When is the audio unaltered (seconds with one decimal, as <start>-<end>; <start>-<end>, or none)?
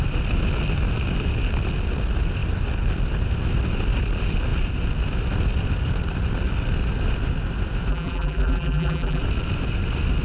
0.0-7.9; 9.2-10.2